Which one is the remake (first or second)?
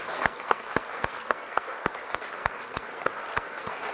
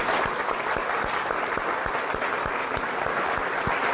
first